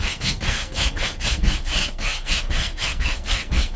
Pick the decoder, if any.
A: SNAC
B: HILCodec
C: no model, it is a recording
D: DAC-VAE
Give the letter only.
A